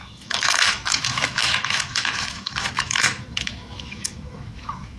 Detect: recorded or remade remade